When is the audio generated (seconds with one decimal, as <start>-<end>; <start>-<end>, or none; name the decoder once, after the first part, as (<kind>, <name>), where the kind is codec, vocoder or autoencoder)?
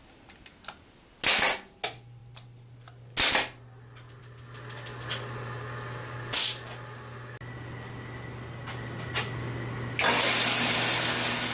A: none